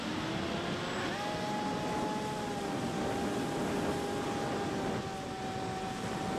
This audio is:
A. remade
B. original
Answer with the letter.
B